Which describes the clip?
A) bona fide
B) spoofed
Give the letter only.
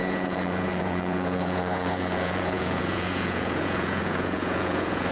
B